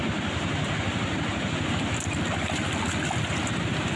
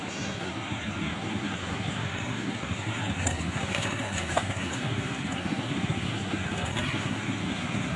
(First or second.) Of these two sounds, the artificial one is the second